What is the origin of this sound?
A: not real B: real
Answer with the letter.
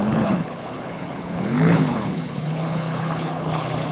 A